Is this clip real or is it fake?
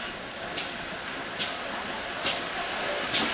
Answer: real